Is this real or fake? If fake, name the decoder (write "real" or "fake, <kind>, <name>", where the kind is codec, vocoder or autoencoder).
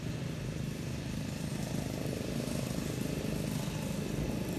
real